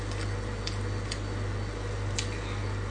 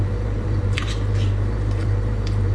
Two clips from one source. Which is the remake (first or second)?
second